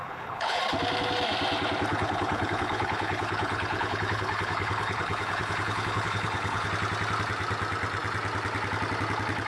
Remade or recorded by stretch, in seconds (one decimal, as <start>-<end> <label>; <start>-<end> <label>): 0.0-0.6 remade; 0.6-1.9 recorded; 1.9-6.7 remade; 6.7-9.5 recorded

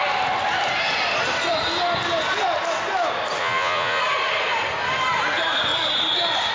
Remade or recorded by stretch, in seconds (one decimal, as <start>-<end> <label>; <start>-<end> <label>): 0.0-3.4 recorded; 3.4-4.0 remade; 4.0-6.5 recorded

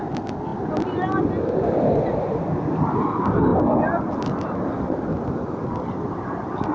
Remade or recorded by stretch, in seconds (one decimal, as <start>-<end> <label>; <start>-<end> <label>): 0.0-6.7 recorded

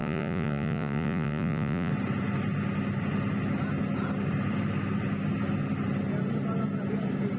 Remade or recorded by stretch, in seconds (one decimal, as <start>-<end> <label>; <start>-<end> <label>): 0.0-1.9 remade; 1.9-7.4 recorded